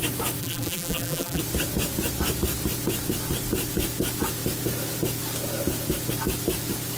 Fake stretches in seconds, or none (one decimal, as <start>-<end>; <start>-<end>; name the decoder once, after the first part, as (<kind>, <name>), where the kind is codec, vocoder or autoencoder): 0.4-1.4 (vocoder, BigVGAN v2)